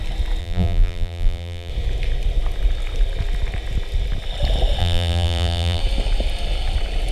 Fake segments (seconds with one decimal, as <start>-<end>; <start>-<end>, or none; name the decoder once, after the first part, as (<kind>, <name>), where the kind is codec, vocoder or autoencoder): 0.4-1.7 (vocoder, BigVGAN v2); 4.8-5.8